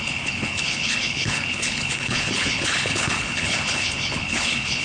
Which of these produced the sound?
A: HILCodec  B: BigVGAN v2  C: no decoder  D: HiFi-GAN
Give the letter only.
A